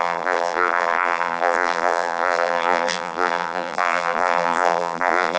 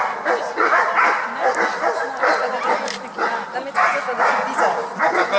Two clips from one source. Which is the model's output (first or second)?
first